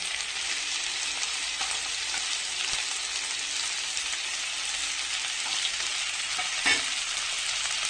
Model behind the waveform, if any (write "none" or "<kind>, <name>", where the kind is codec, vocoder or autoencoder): none